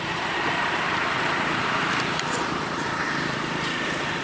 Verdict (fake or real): fake